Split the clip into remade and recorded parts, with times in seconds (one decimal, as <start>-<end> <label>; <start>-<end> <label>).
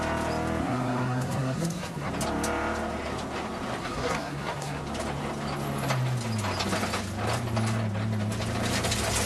0.0-0.6 recorded; 0.6-2.1 remade; 2.1-3.8 recorded; 3.8-4.8 remade; 4.8-9.3 recorded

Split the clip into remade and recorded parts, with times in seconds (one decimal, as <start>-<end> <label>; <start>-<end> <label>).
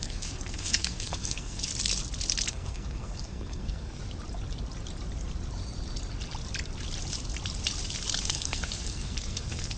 0.0-1.7 remade; 1.7-2.5 recorded; 2.5-4.0 remade; 4.0-8.2 recorded; 8.2-9.8 remade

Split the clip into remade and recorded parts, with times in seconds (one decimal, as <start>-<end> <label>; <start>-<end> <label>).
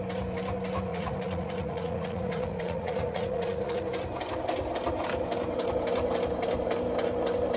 0.0-0.9 recorded; 0.9-3.8 remade; 3.8-7.6 recorded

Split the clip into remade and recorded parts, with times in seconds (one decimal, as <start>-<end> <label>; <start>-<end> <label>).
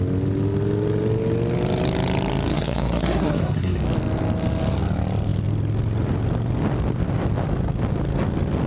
0.0-2.5 recorded; 2.5-3.8 remade; 3.8-8.7 recorded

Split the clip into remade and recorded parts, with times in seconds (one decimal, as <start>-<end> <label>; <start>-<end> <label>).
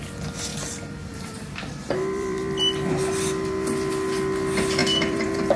0.0-0.5 recorded; 0.5-3.9 remade; 3.9-4.8 recorded; 4.8-5.6 remade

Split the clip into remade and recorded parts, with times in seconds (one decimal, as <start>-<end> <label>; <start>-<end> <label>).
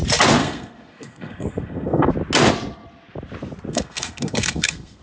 0.0-0.4 recorded; 0.4-2.1 remade; 2.1-3.7 recorded; 3.7-5.0 remade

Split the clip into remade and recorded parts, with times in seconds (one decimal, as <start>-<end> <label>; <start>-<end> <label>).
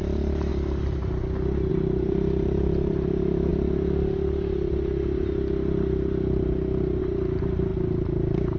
0.0-0.5 remade; 0.5-1.7 recorded; 1.7-3.5 remade; 3.5-7.0 recorded; 7.0-7.7 remade; 7.7-8.6 recorded